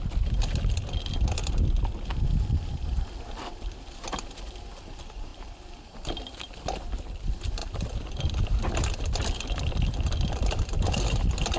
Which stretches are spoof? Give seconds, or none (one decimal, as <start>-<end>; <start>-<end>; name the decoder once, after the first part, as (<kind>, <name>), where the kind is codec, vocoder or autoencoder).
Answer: 0.0-11.6 (vocoder, BigVGAN v2)